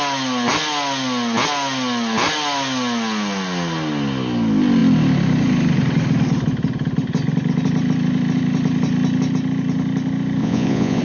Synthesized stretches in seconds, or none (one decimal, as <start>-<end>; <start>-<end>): 10.4-11.0